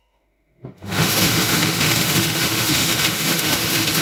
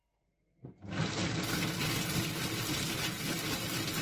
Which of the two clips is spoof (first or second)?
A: first